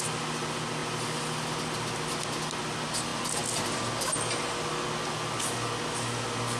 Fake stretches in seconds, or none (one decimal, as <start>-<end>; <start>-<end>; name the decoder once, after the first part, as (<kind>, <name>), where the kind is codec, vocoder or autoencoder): none